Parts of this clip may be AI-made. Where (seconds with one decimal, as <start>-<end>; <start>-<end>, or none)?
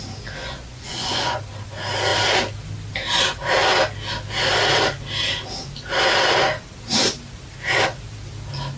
0.4-1.4